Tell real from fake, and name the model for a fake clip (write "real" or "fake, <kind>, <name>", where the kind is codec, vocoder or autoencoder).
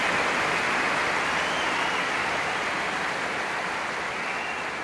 real